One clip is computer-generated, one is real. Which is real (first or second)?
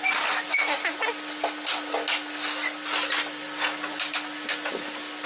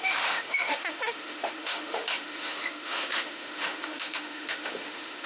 first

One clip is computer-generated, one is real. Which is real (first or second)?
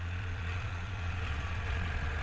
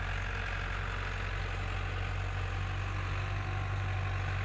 second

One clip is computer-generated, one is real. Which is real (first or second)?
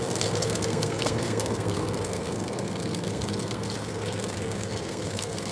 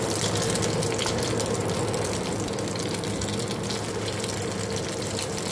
second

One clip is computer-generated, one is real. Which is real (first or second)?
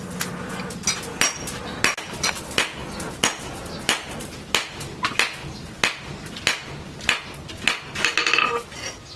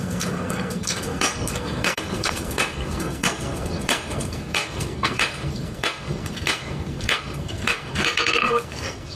first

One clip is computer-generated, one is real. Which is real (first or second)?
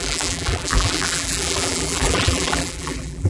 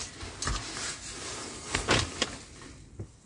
second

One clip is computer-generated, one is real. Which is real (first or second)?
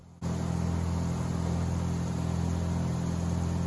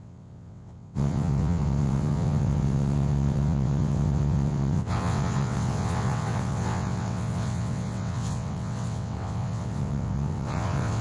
first